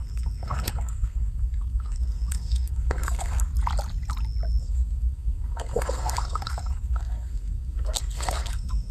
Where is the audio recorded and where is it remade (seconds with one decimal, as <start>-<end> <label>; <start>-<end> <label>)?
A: 0.0-3.5 remade; 3.5-4.6 recorded; 4.6-8.9 remade

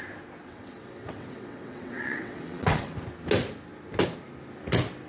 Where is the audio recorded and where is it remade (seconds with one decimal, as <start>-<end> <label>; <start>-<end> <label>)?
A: 0.0-0.4 recorded; 0.4-2.9 remade; 2.9-5.1 recorded

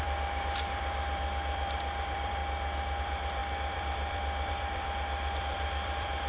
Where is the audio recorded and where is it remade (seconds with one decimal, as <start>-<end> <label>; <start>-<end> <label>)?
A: 0.0-2.4 remade; 2.4-3.0 recorded; 3.0-6.3 remade

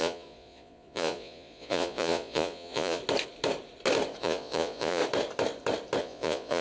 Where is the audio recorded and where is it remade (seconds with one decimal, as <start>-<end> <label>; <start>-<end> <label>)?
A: 0.0-3.0 remade; 3.0-4.2 recorded; 4.2-5.0 remade; 5.0-6.0 recorded; 6.0-6.6 remade

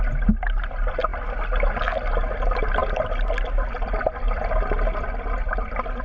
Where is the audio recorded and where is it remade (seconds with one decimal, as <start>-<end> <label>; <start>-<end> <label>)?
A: 0.0-6.0 recorded